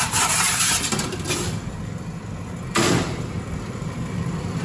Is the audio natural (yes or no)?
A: no